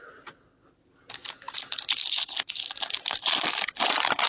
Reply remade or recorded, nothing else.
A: recorded